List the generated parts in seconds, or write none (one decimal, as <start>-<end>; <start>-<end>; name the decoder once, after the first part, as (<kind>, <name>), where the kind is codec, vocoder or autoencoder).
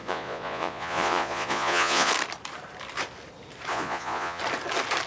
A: 0.0-2.1 (vocoder, Vocos); 3.7-4.4